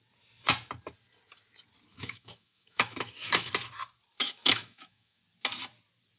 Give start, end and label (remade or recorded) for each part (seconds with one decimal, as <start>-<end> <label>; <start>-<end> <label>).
0.0-1.9 recorded; 1.9-3.5 remade; 3.5-4.2 recorded; 4.2-5.2 remade; 5.2-6.2 recorded